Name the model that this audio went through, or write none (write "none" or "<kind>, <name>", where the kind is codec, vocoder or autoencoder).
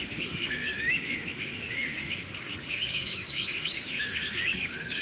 autoencoder, DAC-VAE